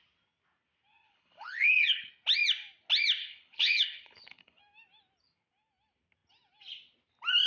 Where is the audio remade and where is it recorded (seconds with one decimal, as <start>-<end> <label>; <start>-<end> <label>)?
0.0-0.9 recorded; 0.9-2.1 remade; 2.1-3.2 recorded; 3.2-4.6 remade; 4.6-7.5 recorded